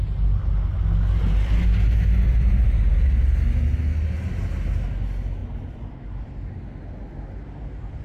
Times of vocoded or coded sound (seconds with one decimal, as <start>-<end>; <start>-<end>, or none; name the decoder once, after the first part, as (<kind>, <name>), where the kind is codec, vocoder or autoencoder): none